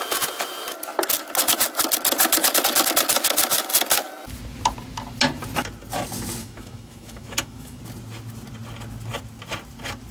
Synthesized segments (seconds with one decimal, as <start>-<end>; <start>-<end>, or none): 6.4-7.8